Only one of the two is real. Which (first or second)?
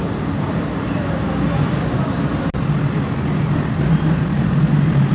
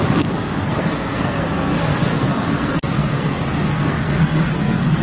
first